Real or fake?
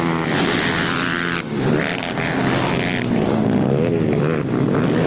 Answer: real